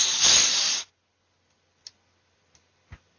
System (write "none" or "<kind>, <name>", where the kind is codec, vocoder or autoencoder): none